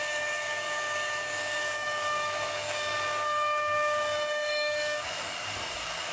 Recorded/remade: remade